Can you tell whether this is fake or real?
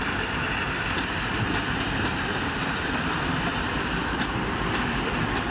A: real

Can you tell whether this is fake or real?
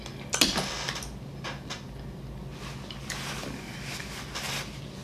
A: real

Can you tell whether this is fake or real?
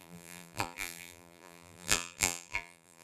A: fake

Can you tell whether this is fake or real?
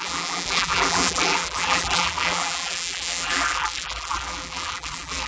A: fake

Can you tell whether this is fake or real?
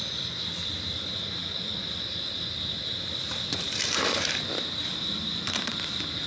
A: fake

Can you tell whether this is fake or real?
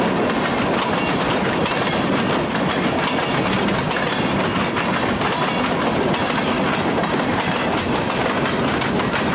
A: real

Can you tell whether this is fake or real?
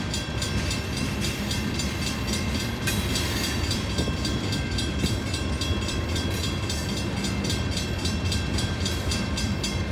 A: fake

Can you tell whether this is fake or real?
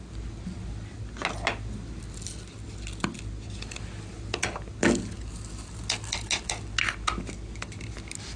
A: real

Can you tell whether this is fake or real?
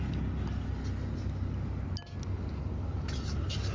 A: real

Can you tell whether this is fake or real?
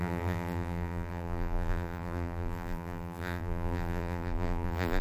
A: fake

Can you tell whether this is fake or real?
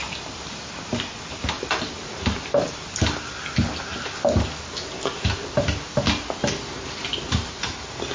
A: real